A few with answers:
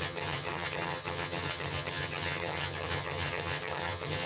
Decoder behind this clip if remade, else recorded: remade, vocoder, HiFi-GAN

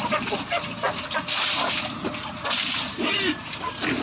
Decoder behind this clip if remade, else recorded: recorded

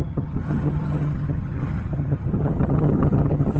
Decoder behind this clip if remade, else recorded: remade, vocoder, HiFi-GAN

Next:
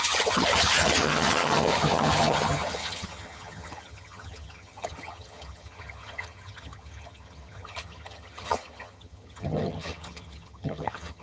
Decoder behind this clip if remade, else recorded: remade, vocoder, HiFi-GAN